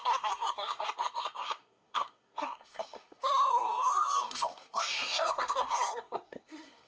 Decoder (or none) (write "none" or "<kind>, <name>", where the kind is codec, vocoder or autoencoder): codec, SNAC